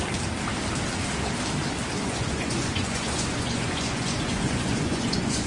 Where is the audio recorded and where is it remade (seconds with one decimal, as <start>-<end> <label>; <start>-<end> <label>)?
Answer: 0.0-2.0 recorded; 2.0-5.5 remade

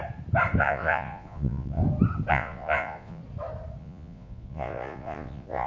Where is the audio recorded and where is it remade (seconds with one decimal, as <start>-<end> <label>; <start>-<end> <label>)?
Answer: 0.0-0.6 recorded; 0.6-1.8 remade; 1.8-2.3 recorded; 2.3-3.2 remade; 3.2-3.8 recorded; 3.8-5.7 remade